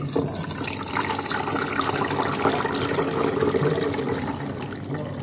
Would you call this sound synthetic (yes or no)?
no